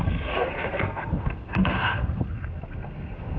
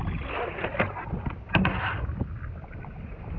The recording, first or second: second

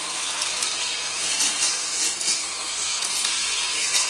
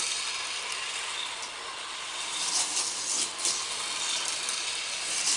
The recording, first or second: second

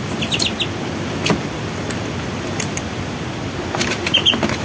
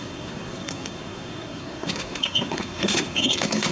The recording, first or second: first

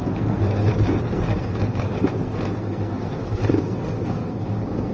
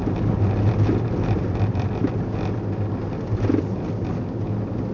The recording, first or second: second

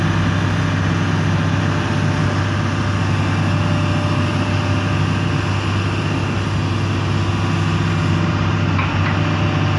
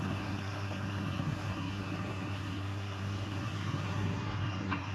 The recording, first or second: first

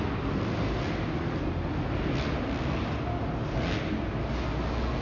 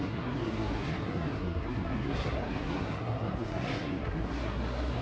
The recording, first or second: first